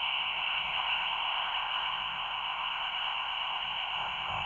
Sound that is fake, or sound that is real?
fake